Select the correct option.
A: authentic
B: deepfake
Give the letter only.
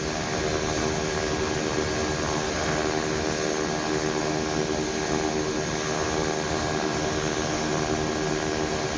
A